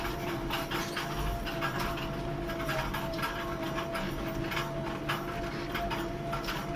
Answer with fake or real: real